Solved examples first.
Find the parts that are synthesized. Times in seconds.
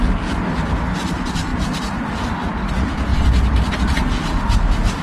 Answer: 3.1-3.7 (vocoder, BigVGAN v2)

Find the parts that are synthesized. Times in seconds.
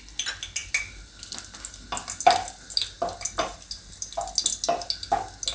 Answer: none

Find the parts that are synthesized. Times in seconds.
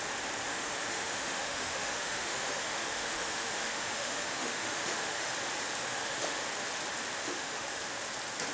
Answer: 0.5-5.3 (autoencoder, DAC-VAE); 5.8-6.4; 7.2-7.8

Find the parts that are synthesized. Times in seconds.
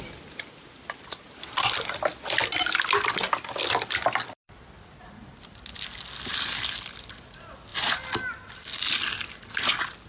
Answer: none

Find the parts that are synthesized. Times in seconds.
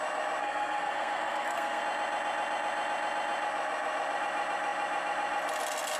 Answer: 0.4-1.8 (codec, SNAC)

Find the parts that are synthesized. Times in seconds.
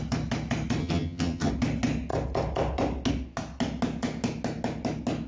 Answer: 0.8-1.5 (vocoder, HiFi-GAN)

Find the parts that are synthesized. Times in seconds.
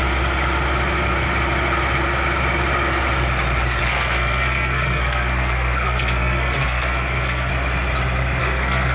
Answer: 3.8-7.5 (codec, SNAC); 8.4-8.9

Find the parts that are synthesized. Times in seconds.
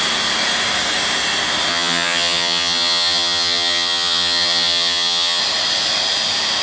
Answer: 1.7-5.4 (vocoder, HiFi-GAN)